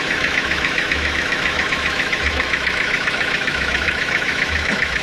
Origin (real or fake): fake